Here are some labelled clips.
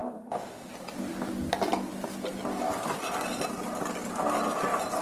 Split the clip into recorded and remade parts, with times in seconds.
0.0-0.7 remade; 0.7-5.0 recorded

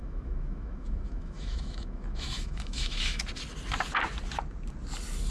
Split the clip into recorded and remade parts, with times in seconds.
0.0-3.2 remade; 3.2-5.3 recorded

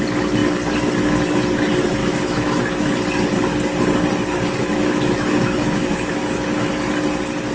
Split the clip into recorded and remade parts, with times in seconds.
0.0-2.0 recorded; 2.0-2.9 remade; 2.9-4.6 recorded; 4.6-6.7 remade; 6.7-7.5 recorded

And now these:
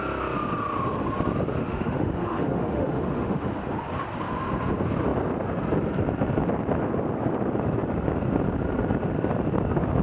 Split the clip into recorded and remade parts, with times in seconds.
0.0-1.6 recorded; 1.6-3.6 remade; 3.6-10.0 recorded